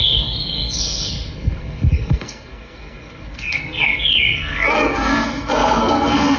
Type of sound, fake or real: fake